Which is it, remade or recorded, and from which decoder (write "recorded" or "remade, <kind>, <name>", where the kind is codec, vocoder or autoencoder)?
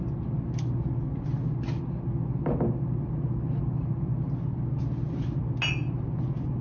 recorded